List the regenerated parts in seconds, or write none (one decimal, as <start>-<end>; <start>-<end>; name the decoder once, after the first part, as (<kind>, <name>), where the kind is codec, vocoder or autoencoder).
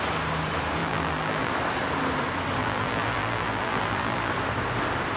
0.8-1.5 (vocoder, BigVGAN v2); 2.6-4.3